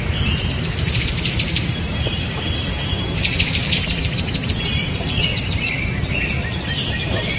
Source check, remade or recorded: remade